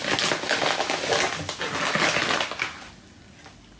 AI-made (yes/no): no